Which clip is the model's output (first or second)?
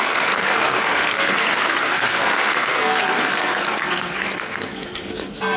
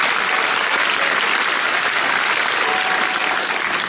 first